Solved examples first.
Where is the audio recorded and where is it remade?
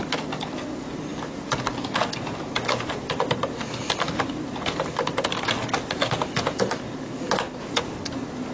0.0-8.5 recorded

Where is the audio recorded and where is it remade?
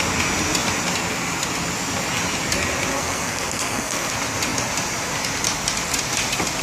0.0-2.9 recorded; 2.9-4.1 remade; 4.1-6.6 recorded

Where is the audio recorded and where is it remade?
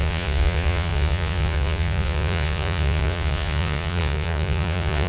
0.0-5.1 remade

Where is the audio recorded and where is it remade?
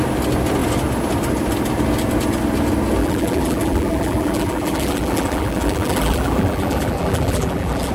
0.0-3.0 recorded; 3.0-7.9 remade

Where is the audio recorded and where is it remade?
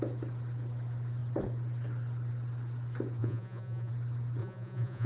0.0-3.2 recorded; 3.2-3.9 remade; 3.9-4.4 recorded; 4.4-5.1 remade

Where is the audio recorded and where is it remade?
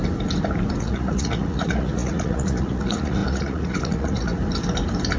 0.0-0.8 recorded; 0.8-4.4 remade; 4.4-5.2 recorded